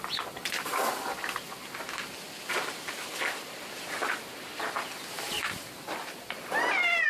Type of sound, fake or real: real